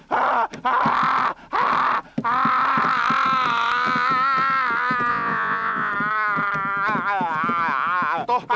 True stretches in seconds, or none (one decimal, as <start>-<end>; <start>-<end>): 0.0-5.1; 5.9-8.6

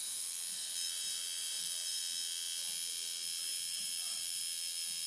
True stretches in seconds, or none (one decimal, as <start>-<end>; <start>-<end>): 2.0-3.5; 4.4-5.1

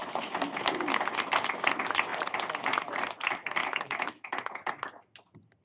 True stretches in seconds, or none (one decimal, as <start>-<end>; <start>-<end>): 0.0-3.6; 4.7-5.6

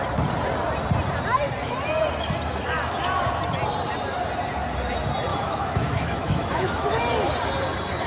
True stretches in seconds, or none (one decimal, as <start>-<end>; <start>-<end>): 0.0-5.3; 7.0-8.1

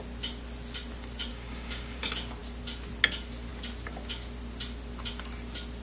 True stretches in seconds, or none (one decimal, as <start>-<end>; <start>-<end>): 0.0-1.3; 2.0-5.8

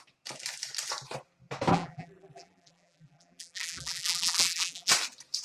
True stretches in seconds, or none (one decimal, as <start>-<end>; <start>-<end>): 0.0-1.7; 4.9-5.4